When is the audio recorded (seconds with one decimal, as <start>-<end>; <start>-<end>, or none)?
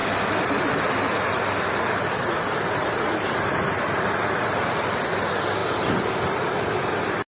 4.4-7.3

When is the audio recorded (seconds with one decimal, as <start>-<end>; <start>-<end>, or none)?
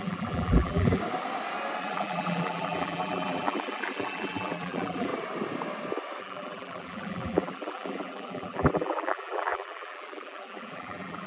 1.0-1.8; 5.1-6.2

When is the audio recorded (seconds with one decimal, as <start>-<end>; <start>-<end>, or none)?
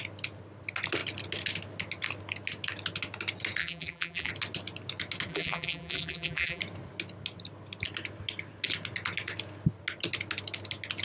0.0-3.6; 4.3-5.3; 6.6-11.0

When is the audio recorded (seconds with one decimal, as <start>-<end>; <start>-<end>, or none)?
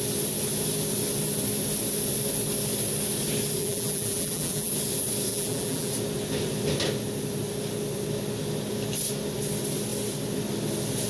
0.0-3.6; 4.7-5.3; 5.9-11.1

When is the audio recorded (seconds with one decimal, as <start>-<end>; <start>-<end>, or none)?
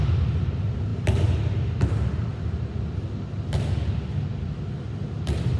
0.0-5.6